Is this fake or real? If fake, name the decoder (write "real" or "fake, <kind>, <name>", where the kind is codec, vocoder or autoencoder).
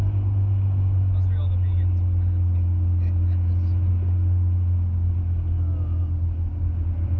real